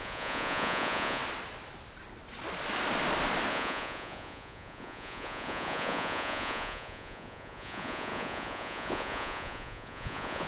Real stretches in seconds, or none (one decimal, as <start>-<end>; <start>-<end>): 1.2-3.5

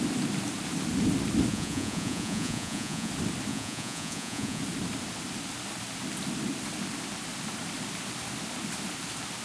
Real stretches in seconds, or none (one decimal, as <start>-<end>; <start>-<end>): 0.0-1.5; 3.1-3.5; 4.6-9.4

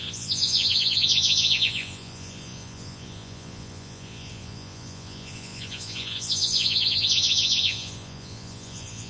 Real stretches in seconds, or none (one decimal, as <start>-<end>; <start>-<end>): none